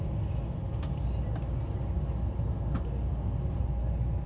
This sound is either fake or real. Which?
real